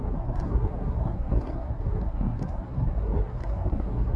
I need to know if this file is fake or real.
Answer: fake